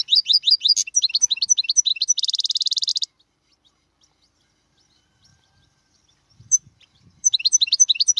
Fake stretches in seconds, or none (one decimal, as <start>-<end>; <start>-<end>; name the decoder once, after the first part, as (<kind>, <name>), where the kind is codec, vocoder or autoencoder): 5.3-8.2 (vocoder, BigVGAN v2)